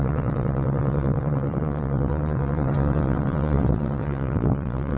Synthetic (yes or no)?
yes